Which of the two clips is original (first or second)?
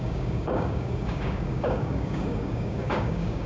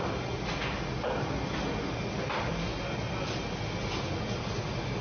second